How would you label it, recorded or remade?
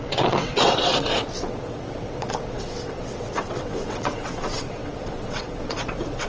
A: remade